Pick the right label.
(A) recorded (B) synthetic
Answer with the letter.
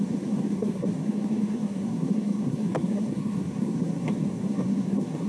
B